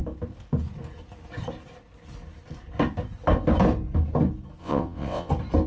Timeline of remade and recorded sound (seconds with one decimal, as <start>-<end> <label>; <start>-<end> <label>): 0.0-4.6 recorded; 4.6-5.3 remade; 5.3-5.7 recorded